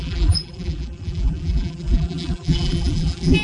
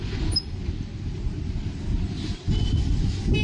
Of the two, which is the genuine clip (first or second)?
second